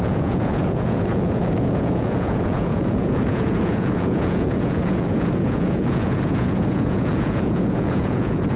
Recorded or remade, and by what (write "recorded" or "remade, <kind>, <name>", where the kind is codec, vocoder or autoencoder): remade, vocoder, Vocos